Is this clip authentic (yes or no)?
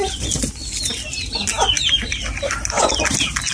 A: yes